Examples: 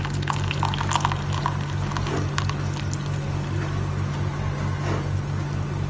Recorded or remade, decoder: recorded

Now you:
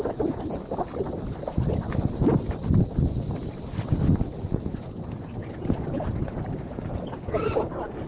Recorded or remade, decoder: recorded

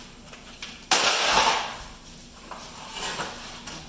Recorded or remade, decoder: recorded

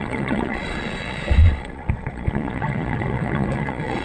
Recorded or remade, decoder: remade, vocoder, Vocos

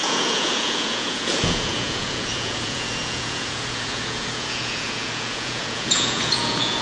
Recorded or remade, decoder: remade, vocoder, Vocos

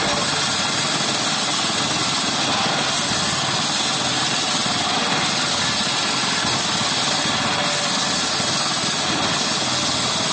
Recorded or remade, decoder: recorded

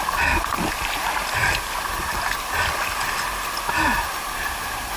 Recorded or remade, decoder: recorded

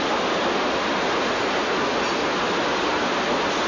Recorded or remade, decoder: recorded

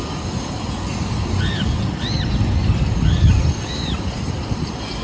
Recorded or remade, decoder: recorded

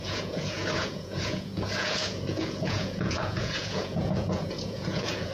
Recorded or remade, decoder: remade, vocoder, Vocos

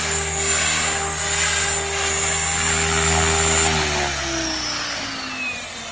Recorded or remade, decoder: recorded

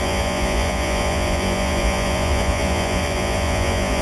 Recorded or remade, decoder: remade, vocoder, Vocos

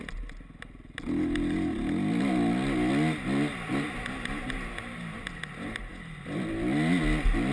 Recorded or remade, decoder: recorded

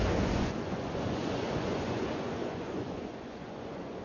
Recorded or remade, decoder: remade, vocoder, Vocos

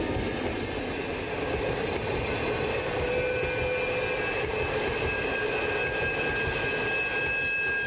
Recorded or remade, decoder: recorded